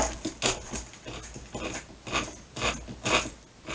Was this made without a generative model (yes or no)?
yes